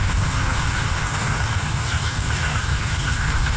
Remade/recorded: remade